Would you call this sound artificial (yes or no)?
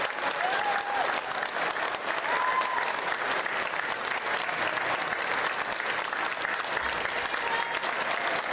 no